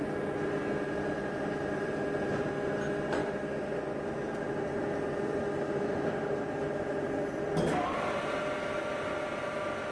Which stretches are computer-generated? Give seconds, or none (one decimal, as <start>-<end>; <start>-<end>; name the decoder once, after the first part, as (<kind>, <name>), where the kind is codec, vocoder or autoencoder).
none